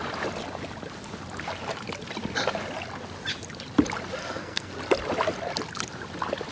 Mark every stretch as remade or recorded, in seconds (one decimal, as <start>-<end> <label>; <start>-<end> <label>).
0.0-4.2 recorded; 4.2-4.7 remade; 4.7-6.5 recorded